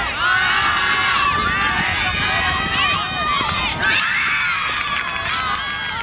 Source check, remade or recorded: recorded